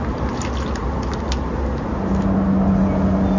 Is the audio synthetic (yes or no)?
no